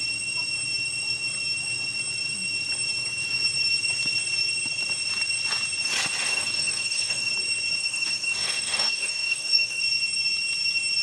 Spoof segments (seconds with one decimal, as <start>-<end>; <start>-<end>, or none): 6.2-7.3; 7.8-9.8